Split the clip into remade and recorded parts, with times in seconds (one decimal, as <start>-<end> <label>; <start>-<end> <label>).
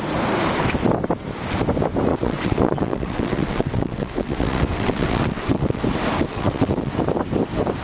0.0-2.1 recorded; 2.1-5.8 remade; 5.8-6.3 recorded; 6.3-6.9 remade; 6.9-7.8 recorded